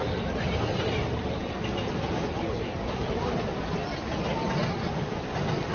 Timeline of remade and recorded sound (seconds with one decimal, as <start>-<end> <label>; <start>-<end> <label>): 0.0-5.7 recorded

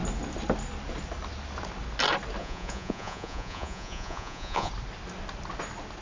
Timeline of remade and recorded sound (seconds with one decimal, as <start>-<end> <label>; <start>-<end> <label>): 0.0-2.4 recorded; 2.4-4.7 remade; 4.7-6.0 recorded